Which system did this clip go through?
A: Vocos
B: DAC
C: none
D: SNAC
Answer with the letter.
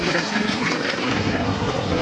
D